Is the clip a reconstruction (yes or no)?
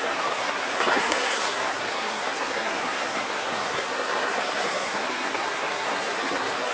yes